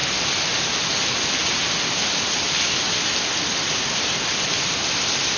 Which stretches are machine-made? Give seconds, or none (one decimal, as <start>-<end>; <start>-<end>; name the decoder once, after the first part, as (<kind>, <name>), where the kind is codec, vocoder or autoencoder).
none